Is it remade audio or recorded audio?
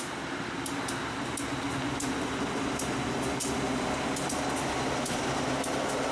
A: recorded